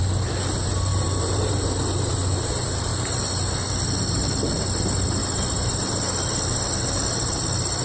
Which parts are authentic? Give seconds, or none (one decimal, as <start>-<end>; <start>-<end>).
0.0-0.9; 1.5-7.8